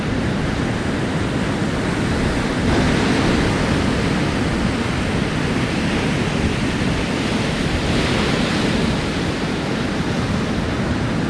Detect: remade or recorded recorded